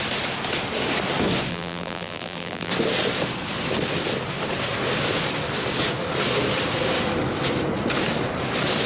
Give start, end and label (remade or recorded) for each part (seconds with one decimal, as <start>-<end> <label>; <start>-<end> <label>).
0.0-1.5 recorded; 1.5-2.7 remade; 2.7-8.9 recorded